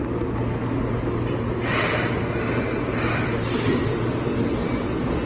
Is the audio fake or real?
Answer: real